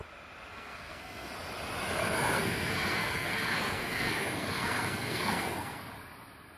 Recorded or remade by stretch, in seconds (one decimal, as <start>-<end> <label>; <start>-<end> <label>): 0.0-0.5 recorded; 0.5-1.3 remade; 1.3-2.0 recorded; 2.0-5.9 remade; 5.9-6.6 recorded